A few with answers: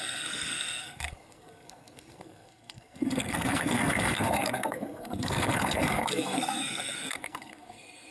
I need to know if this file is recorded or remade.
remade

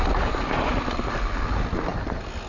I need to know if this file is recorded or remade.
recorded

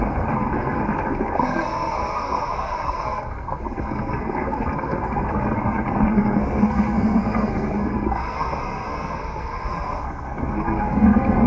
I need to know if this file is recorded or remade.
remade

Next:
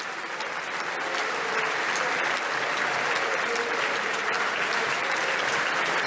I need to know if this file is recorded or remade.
remade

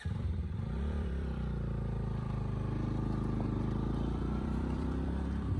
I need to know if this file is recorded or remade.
remade